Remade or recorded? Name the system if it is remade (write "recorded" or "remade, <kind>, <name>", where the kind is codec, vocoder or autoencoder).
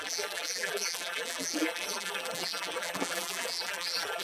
remade, vocoder, BigVGAN v2